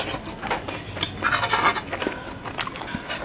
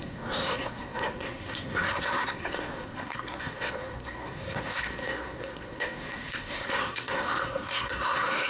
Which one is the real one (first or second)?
first